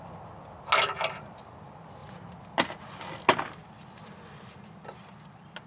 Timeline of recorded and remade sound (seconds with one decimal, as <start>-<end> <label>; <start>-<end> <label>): 0.0-5.7 recorded